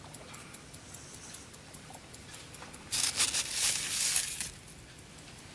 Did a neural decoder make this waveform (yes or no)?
no